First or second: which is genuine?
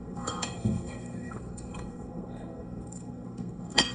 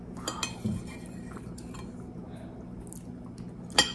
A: second